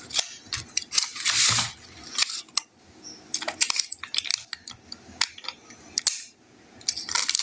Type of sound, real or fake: real